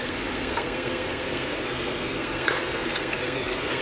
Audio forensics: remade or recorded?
remade